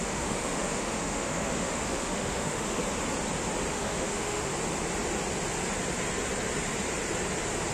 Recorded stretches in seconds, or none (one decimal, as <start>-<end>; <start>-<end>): 2.8-3.7; 4.5-7.7